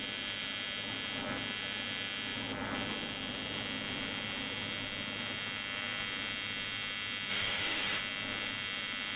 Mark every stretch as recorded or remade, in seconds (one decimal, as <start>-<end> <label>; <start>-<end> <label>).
0.0-7.3 recorded; 7.3-8.0 remade; 8.0-9.2 recorded